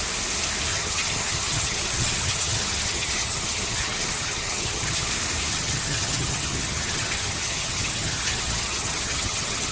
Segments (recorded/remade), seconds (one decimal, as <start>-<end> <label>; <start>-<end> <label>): 0.0-0.7 recorded; 0.7-5.1 remade; 5.1-5.5 recorded; 5.5-9.7 remade